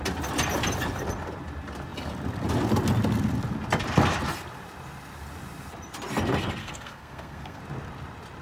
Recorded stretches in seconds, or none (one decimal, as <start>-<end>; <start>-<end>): 0.0-6.6; 7.6-8.4